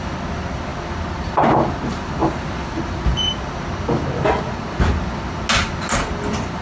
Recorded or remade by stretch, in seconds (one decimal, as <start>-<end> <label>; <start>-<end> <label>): 0.0-6.6 recorded